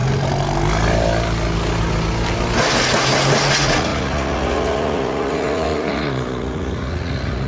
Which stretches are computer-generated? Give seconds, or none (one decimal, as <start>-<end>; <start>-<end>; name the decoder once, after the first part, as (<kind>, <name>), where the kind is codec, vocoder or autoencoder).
3.5-7.5 (vocoder, Vocos)